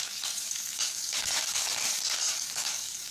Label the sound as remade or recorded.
remade